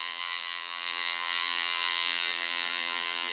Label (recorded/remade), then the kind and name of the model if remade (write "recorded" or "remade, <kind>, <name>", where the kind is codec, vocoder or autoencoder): remade, vocoder, BigVGAN v2